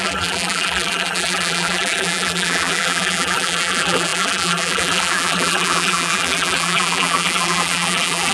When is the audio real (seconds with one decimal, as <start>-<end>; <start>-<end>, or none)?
none